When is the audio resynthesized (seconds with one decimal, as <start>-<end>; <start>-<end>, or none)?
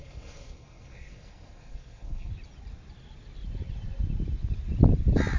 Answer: 0.0-2.3